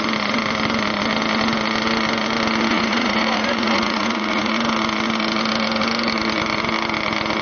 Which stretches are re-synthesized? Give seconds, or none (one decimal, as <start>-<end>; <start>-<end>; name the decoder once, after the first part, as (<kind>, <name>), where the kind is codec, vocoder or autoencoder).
2.7-4.5 (vocoder, Vocos)